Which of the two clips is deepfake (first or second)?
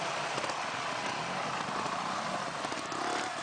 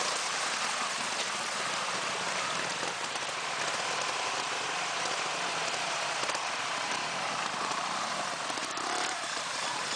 second